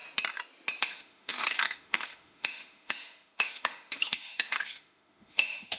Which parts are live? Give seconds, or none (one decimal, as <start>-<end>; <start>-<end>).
0.0-0.8